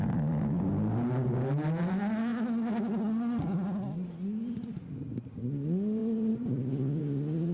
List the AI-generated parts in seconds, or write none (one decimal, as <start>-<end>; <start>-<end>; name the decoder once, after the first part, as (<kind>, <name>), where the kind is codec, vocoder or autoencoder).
none